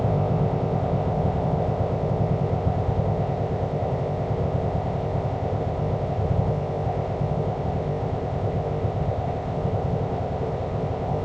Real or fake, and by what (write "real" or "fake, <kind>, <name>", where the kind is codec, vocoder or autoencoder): fake, codec, ZipCodec